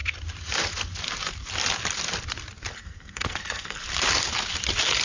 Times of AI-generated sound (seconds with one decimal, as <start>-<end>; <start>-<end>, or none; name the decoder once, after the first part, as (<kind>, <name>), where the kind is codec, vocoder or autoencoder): 2.7-3.8 (codec, SNAC)